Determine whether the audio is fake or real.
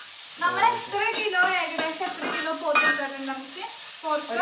real